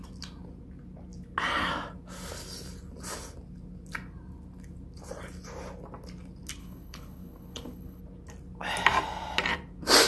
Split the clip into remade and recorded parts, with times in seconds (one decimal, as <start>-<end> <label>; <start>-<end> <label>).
0.0-6.6 recorded; 6.6-8.0 remade; 8.0-10.1 recorded